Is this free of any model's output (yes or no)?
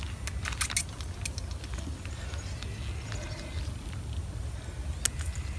yes